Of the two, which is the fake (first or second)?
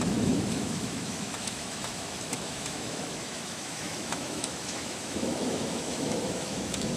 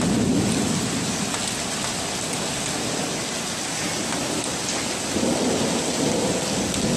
first